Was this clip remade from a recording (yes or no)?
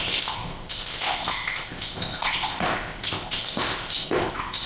yes